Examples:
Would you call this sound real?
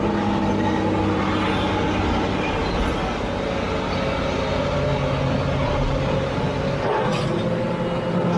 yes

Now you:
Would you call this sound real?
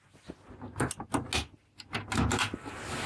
yes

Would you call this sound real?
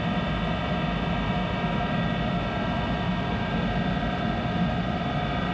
yes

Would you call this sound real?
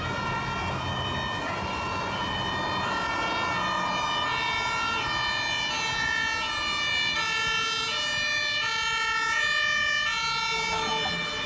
yes